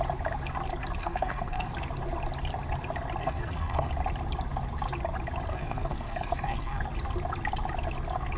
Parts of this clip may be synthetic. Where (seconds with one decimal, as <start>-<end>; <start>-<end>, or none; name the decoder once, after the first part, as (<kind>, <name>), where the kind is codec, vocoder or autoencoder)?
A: 1.0-1.7 (codec, SNAC); 3.2-3.9; 5.5-6.8